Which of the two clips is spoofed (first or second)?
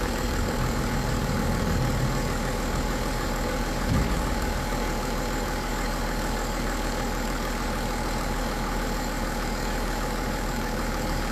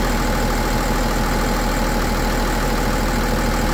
first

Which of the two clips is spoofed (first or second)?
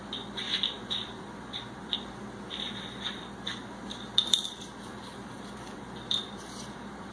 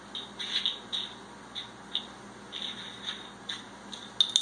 first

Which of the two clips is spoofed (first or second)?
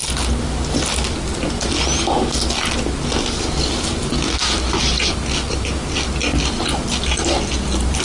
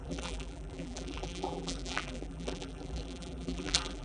second